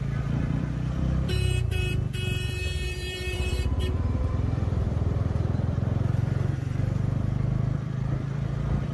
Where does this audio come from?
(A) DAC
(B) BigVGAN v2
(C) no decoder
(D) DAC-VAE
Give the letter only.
B